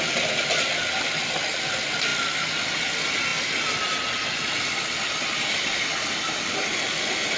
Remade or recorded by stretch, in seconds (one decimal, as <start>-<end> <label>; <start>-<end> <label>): 0.0-7.4 recorded